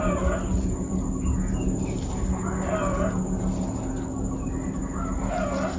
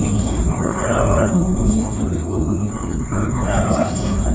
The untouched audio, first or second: first